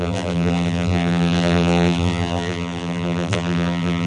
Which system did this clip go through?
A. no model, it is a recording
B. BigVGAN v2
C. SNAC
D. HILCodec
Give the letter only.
B